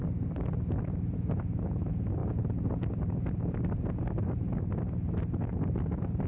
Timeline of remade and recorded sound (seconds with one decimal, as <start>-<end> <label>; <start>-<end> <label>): 0.0-6.3 recorded